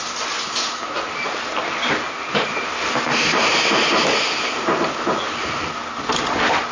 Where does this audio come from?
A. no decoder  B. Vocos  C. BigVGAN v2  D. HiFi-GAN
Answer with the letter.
A